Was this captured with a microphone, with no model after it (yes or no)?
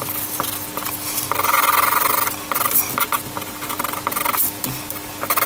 yes